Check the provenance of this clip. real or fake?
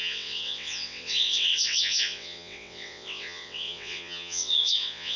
fake